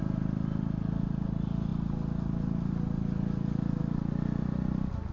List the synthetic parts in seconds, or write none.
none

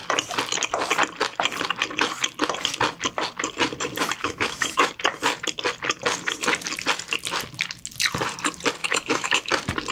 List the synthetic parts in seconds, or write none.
4.2-4.9; 8.8-9.5

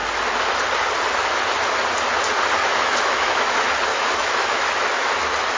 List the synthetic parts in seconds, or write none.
2.6-3.5; 3.9-5.1